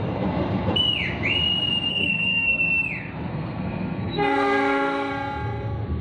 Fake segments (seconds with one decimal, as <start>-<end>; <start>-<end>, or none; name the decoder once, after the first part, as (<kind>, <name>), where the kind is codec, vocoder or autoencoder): 1.9-2.7 (codec, SNAC); 3.3-5.1